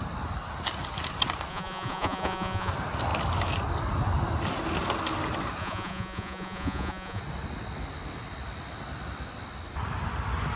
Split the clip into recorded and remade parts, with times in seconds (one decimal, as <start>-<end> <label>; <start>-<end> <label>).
0.0-1.5 recorded; 1.5-2.7 remade; 2.7-5.6 recorded; 5.6-7.2 remade; 7.2-10.6 recorded